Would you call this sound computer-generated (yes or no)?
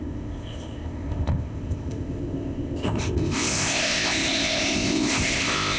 yes